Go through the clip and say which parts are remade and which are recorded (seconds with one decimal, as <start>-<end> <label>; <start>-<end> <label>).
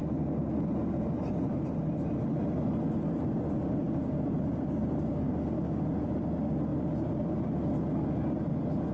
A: 0.0-3.8 recorded; 3.8-4.6 remade; 4.6-5.1 recorded; 5.1-5.8 remade; 5.8-8.9 recorded